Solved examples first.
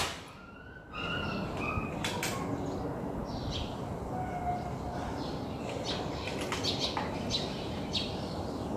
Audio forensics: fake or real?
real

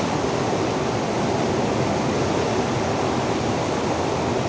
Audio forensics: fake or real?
real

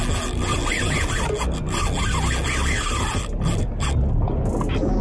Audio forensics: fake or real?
real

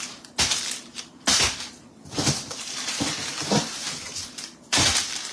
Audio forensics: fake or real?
fake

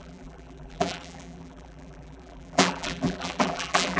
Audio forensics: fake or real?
fake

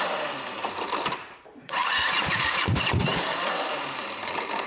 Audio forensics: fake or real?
fake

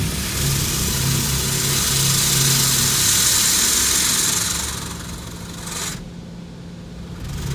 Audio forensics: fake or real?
real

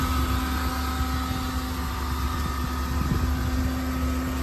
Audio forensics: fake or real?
real